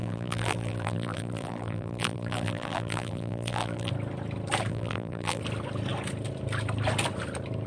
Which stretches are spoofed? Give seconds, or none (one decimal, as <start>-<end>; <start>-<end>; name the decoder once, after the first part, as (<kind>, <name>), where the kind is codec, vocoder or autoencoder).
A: 0.0-3.9 (vocoder, BigVGAN v2); 4.7-5.4